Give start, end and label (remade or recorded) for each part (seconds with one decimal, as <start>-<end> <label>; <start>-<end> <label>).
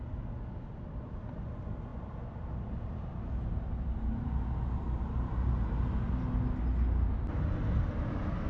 0.0-1.9 recorded; 1.9-5.8 remade; 5.8-8.5 recorded